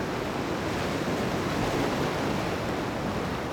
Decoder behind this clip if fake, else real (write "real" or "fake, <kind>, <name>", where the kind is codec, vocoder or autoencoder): real